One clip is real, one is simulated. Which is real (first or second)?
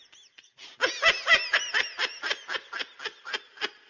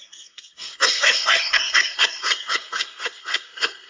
first